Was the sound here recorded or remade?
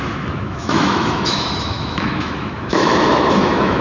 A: remade